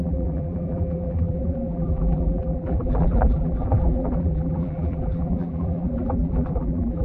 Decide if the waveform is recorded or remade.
remade